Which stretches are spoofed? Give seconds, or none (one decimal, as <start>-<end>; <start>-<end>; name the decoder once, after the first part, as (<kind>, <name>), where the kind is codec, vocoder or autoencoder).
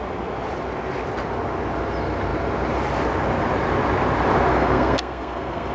4.5-5.7 (codec, SNAC)